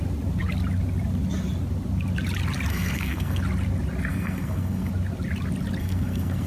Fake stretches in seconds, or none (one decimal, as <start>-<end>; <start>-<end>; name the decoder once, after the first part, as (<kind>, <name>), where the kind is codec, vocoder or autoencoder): 2.7-3.4 (codec, SNAC); 4.1-4.9; 5.8-6.5